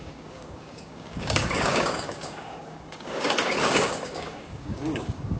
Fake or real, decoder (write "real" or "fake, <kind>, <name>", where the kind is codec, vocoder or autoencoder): fake, codec, DAC